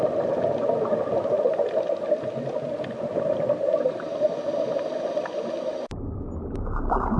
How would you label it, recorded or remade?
recorded